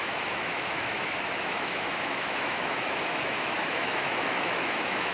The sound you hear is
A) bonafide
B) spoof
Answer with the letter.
B